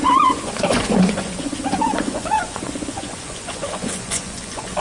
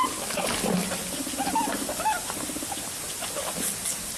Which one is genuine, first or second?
second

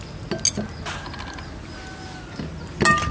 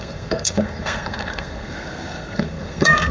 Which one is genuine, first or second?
first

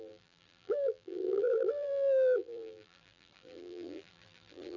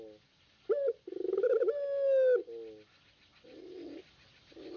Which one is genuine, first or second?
second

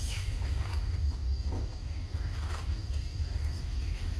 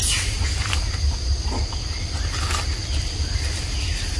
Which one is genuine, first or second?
second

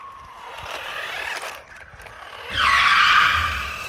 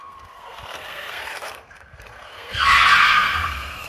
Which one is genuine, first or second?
first